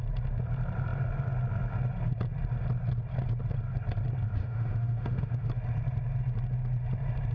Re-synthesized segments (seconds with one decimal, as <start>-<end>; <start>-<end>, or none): 4.4-5.5